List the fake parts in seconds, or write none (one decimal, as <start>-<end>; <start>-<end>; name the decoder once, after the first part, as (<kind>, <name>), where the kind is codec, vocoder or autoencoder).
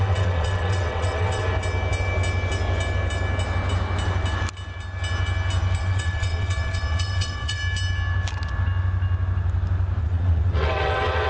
0.0-1.4 (vocoder, WaveNeXt); 5.8-7.6; 10.0-11.3